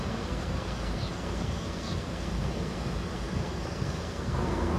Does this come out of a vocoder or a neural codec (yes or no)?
yes